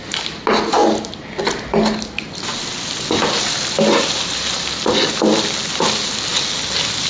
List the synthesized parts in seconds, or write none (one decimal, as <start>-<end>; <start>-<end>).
none